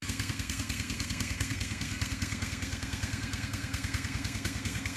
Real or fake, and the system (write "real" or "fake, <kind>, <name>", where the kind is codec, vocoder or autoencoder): fake, codec, SNAC